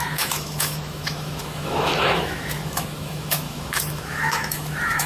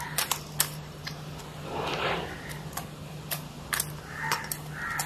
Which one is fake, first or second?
first